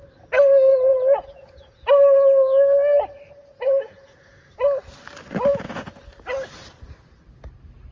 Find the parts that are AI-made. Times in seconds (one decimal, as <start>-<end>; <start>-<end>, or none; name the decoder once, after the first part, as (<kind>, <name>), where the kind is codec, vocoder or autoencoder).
0.7-1.9 (vocoder, Vocos); 3.4-4.5; 5.5-6.0